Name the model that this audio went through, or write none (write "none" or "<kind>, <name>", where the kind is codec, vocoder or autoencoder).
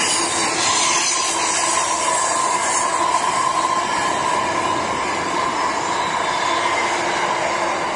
none